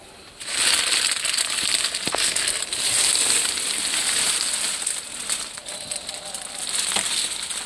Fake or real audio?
real